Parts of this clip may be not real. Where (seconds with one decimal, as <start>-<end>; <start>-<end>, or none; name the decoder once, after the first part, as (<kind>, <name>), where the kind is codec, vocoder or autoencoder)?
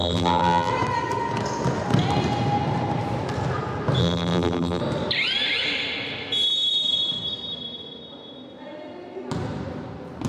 0.0-0.7 (vocoder, BigVGAN v2); 4.0-4.8